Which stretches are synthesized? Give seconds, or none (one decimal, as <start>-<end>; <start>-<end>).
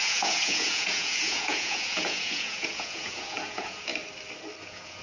0.0-3.9; 4.6-5.0